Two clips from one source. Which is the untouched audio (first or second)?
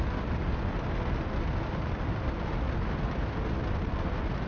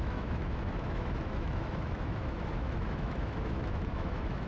first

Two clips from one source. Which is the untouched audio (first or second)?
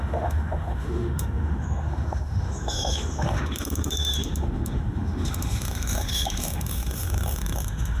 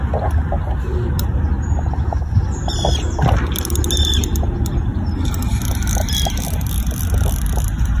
second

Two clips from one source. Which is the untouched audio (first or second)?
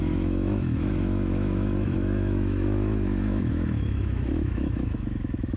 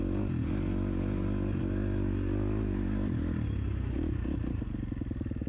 second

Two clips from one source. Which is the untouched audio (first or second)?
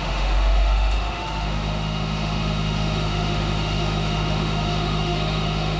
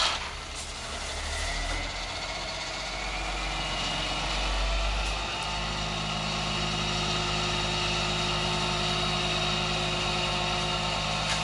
second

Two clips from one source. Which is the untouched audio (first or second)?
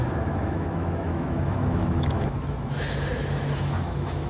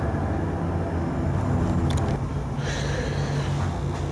second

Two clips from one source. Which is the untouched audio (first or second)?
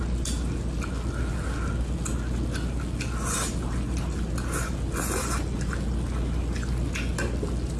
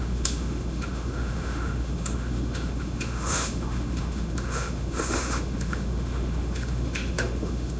first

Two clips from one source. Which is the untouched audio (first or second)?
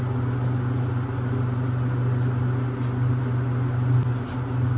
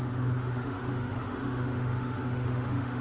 first